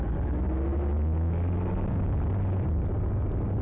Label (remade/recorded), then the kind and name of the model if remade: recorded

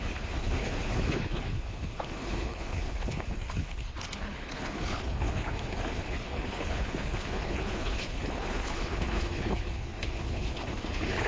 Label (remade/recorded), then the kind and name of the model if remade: remade, codec, HILCodec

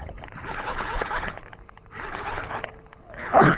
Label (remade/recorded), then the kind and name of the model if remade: remade, codec, HILCodec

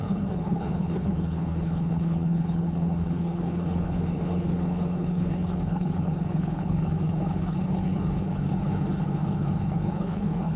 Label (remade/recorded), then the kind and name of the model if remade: remade, codec, HILCodec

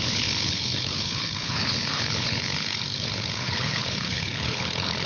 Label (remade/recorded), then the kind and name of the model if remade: remade, codec, HILCodec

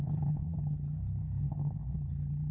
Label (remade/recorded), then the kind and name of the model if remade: remade, codec, HILCodec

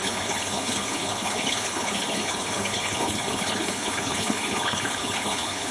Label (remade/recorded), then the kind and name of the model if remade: remade, codec, HILCodec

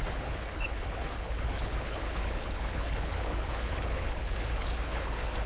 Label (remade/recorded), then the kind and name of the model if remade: remade, codec, HILCodec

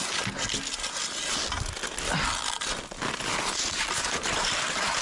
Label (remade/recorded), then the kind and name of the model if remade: recorded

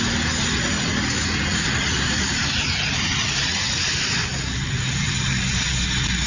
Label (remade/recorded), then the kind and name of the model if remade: recorded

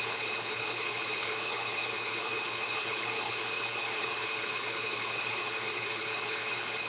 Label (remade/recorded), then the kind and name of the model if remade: remade, codec, HILCodec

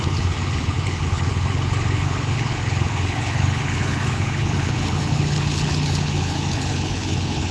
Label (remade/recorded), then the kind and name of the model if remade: remade, codec, HILCodec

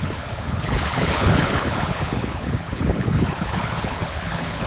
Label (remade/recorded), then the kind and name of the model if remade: remade, codec, HILCodec